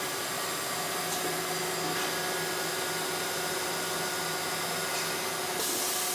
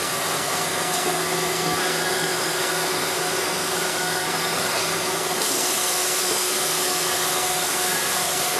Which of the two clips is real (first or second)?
first